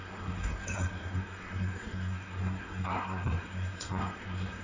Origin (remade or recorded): remade